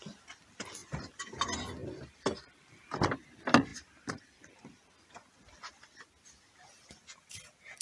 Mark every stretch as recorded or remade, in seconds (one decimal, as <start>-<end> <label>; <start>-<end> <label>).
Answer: 0.0-1.8 recorded; 1.8-2.8 remade; 2.8-3.7 recorded; 3.7-5.7 remade; 5.7-7.8 recorded